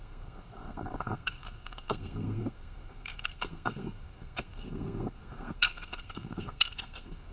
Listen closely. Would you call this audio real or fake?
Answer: fake